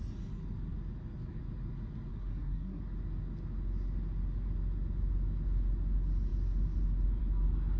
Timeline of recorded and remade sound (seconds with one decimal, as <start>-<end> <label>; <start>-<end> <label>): 0.0-2.1 recorded; 2.1-2.8 remade; 2.8-7.8 recorded